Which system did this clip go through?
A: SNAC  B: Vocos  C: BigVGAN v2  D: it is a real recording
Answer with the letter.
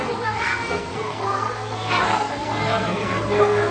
A